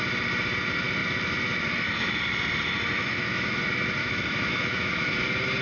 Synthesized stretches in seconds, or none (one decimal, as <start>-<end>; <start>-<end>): 3.0-3.6; 4.0-5.1